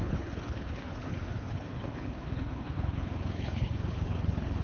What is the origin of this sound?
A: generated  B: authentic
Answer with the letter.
A